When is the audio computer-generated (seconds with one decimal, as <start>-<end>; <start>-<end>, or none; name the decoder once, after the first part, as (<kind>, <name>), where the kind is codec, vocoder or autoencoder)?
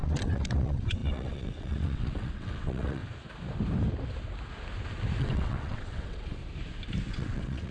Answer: 0.0-3.0 (vocoder, WaveNeXt); 5.2-6.4; 7.1-7.7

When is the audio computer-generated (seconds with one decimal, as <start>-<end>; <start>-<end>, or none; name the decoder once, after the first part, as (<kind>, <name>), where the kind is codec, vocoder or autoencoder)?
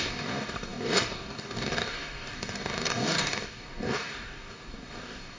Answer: 0.0-5.4 (codec, DAC)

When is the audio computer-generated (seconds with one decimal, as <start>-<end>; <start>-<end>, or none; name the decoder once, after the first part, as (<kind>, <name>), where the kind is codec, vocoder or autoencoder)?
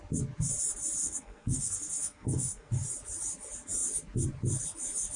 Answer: 1.0-2.7 (codec, SNAC)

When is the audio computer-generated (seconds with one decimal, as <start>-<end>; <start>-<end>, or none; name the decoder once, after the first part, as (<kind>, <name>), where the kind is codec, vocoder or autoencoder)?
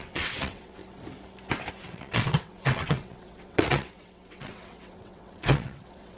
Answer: 0.0-0.8 (vocoder, WaveNeXt); 1.8-6.2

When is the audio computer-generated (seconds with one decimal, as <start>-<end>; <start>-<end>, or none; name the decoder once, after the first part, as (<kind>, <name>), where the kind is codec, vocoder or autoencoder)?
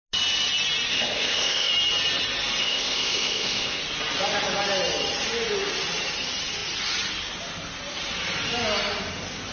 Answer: 0.9-1.7 (codec, ZipCodec); 2.6-3.8